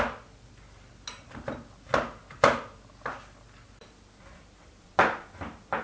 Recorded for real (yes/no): yes